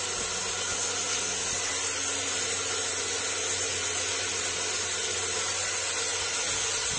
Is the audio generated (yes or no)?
no